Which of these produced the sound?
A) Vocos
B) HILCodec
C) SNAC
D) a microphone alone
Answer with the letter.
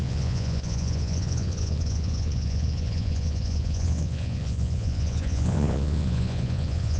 A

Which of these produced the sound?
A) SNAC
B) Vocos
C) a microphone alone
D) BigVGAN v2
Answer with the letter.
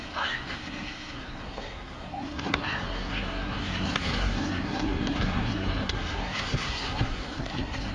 A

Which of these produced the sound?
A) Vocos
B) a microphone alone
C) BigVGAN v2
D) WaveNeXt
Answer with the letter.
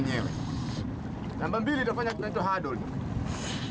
B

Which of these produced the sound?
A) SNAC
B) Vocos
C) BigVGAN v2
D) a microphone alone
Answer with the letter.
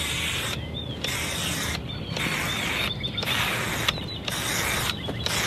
D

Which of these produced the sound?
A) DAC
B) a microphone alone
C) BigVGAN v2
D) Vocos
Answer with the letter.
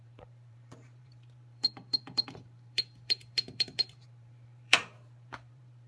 C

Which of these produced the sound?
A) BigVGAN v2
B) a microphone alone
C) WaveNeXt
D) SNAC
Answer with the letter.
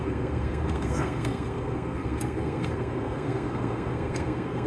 D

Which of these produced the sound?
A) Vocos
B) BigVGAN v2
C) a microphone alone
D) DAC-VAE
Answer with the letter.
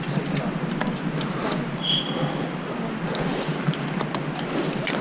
C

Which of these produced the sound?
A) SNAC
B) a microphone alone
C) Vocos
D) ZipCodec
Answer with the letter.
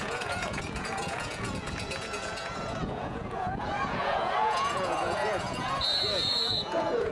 C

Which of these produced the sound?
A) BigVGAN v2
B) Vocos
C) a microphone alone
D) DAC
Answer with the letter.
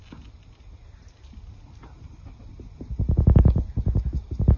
C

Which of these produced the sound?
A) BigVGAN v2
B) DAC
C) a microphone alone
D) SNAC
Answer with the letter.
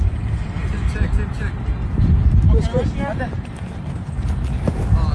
C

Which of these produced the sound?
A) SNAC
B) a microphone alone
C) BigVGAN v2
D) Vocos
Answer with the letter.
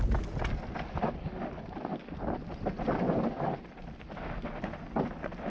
B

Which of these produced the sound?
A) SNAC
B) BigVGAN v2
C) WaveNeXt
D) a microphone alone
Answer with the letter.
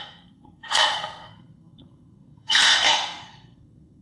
A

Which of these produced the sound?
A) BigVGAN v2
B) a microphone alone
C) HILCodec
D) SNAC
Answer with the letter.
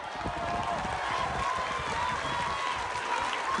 B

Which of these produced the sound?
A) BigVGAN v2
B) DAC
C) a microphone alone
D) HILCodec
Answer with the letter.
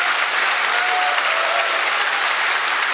C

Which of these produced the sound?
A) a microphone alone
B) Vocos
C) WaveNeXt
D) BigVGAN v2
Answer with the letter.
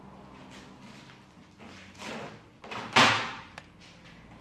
A